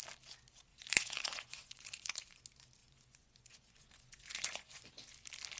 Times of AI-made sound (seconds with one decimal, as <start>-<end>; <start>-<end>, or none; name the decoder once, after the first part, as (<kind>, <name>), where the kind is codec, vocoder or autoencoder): 0.7-2.4 (vocoder, Vocos); 2.8-4.9